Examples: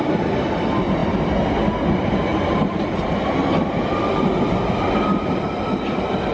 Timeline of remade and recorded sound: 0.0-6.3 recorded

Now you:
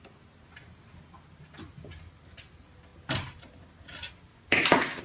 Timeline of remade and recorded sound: 0.0-4.3 recorded; 4.3-5.0 remade

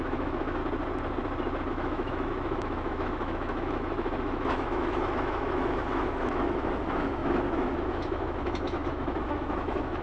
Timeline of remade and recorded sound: 0.0-0.6 remade; 0.6-1.7 recorded; 1.7-10.0 remade

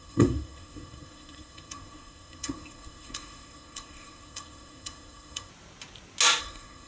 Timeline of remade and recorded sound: 0.0-5.5 remade; 5.5-6.4 recorded; 6.4-6.9 remade

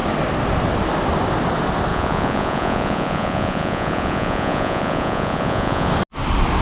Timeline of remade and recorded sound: 0.0-1.9 recorded; 1.9-5.9 remade; 5.9-6.6 recorded

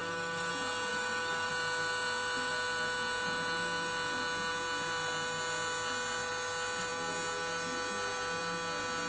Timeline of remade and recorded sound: 0.0-0.5 remade; 0.5-0.9 recorded; 0.9-1.5 remade; 1.5-9.1 recorded

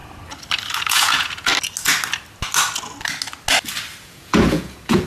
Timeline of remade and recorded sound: 0.0-0.9 recorded; 0.9-1.5 remade; 1.5-4.0 recorded; 4.0-5.1 remade